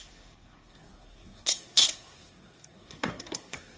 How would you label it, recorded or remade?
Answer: remade